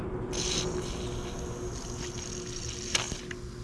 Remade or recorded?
recorded